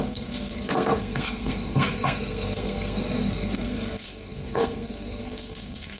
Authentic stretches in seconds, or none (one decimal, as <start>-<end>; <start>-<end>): none